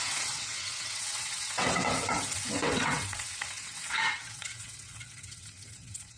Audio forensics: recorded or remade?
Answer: remade